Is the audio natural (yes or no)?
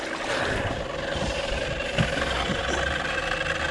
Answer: yes